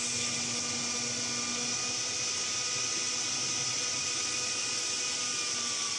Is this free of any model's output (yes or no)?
yes